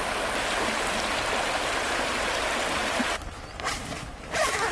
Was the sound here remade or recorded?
remade